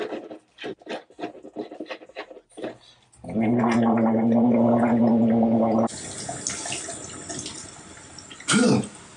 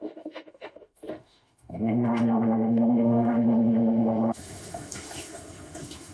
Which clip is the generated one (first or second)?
second